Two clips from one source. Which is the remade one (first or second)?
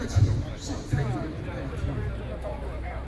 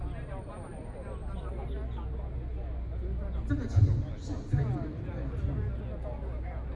first